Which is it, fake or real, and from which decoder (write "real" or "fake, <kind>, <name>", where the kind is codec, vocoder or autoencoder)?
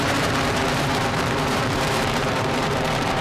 fake, vocoder, BigVGAN v2